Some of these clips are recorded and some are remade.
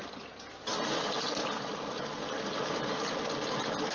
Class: recorded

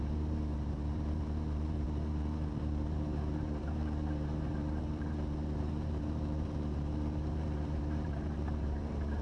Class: remade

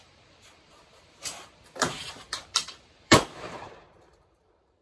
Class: remade